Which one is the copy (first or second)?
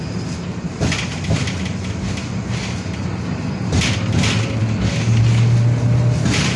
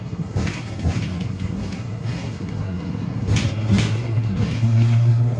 second